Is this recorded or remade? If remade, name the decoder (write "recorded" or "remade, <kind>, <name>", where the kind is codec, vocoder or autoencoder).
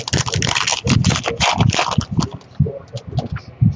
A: recorded